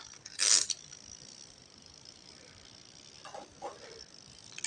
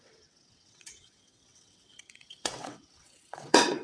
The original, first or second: first